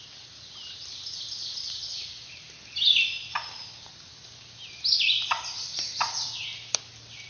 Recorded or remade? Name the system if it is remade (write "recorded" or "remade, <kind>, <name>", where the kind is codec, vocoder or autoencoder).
recorded